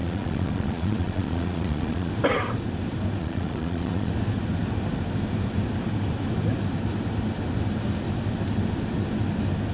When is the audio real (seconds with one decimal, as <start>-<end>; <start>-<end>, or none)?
2.1-3.2; 4.1-9.7